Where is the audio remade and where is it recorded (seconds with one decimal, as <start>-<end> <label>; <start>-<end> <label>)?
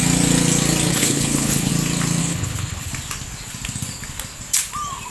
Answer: 0.0-0.9 recorded; 0.9-1.7 remade; 1.7-2.2 recorded; 2.2-2.9 remade; 2.9-5.1 recorded